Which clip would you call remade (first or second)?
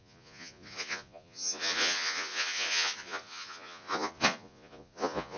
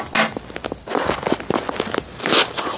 first